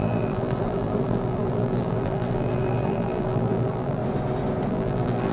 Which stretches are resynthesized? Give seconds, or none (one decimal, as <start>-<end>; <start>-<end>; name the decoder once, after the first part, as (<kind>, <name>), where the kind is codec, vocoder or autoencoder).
0.0-4.0 (vocoder, BigVGAN v2); 4.7-5.3